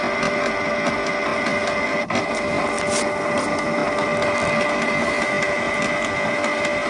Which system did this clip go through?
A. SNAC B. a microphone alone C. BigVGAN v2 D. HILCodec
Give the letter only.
B